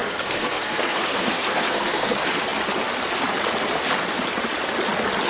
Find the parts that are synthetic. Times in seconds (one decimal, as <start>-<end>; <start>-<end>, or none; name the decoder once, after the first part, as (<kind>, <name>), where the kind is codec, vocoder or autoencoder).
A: 0.0-2.1 (codec, SNAC)